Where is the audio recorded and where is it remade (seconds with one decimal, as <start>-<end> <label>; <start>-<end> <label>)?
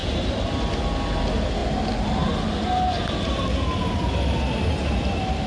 0.0-5.5 recorded